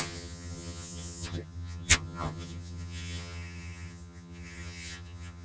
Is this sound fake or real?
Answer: fake